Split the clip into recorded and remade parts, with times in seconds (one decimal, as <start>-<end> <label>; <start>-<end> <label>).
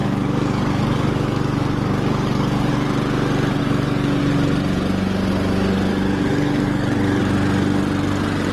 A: 0.0-2.7 remade; 2.7-3.6 recorded; 3.6-4.2 remade; 4.2-5.9 recorded; 5.9-7.2 remade; 7.2-8.5 recorded